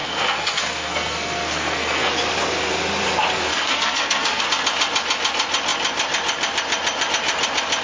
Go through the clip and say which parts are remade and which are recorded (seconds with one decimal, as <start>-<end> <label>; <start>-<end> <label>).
0.0-2.1 remade; 2.1-3.5 recorded; 3.5-4.4 remade; 4.4-7.8 recorded